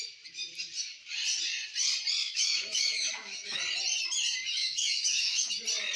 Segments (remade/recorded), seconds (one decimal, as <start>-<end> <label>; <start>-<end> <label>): 0.0-2.2 recorded; 2.2-3.6 remade; 3.6-4.6 recorded; 4.6-5.5 remade; 5.5-6.0 recorded